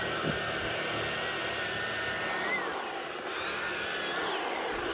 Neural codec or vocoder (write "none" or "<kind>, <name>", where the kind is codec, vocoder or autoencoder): none